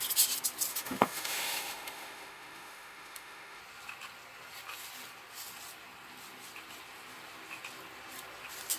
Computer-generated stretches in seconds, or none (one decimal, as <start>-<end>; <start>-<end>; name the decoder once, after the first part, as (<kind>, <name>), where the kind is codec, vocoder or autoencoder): 0.7-3.6 (autoencoder, DAC-VAE)

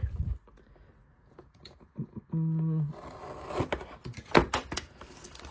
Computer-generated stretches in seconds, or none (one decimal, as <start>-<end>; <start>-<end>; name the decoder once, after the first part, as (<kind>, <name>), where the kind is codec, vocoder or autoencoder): 1.1-2.2 (vocoder, Vocos); 4.4-5.0

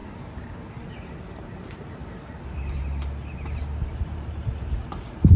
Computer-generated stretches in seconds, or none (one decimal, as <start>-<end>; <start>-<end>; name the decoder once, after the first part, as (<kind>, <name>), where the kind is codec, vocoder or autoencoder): 0.9-2.0 (vocoder, BigVGAN v2); 4.0-5.4

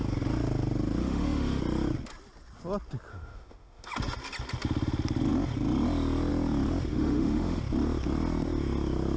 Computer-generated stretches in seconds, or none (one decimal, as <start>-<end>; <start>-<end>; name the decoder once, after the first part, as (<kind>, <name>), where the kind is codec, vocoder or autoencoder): 1.0-1.6 (autoencoder, DAC-VAE); 3.1-3.9; 6.9-7.6